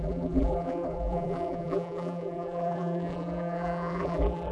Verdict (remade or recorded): remade